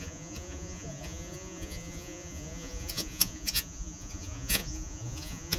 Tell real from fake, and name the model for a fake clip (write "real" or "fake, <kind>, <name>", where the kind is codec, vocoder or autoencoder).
fake, vocoder, Vocos